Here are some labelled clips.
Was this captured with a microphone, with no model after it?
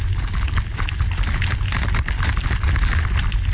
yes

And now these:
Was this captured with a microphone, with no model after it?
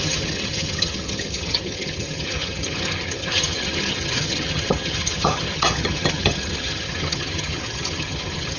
no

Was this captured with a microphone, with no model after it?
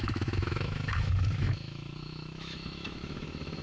no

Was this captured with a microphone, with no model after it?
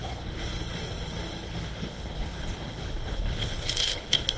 no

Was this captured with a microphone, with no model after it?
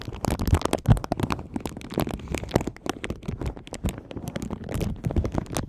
yes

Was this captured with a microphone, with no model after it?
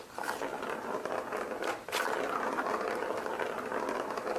yes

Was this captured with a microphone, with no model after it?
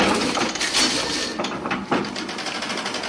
yes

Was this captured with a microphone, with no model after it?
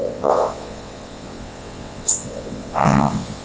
no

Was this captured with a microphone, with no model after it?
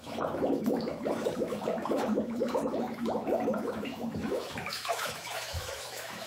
no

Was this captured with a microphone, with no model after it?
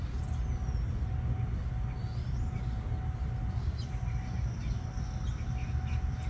yes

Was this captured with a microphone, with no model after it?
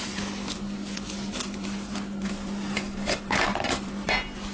yes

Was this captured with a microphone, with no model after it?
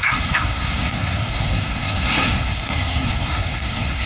no